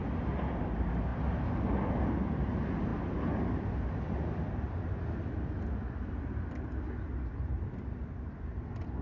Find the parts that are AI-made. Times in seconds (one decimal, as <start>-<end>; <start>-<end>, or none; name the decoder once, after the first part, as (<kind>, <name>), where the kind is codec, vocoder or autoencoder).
none